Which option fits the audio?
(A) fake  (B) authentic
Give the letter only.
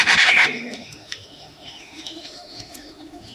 A